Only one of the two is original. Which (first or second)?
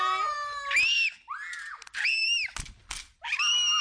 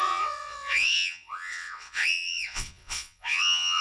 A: first